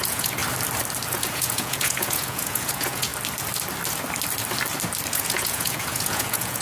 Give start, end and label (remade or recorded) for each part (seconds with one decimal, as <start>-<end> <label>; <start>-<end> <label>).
0.0-0.4 remade; 0.4-1.1 recorded; 1.1-3.1 remade; 3.1-5.1 recorded; 5.1-6.6 remade